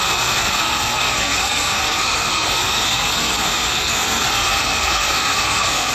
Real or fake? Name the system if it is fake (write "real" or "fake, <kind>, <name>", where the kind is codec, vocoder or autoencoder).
fake, codec, SNAC